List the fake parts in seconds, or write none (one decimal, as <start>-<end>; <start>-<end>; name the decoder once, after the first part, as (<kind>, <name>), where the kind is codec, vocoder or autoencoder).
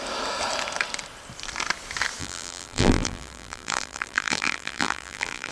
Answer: 2.2-5.5 (vocoder, BigVGAN v2)